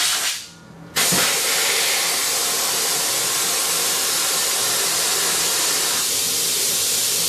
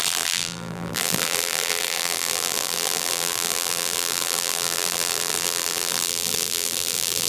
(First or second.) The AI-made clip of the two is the second